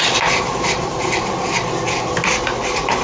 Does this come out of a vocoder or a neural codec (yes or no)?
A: no